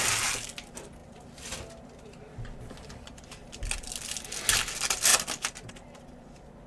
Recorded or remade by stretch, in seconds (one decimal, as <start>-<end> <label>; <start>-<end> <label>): 0.0-6.7 recorded